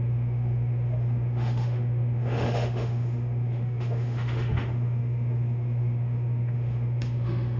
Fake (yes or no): yes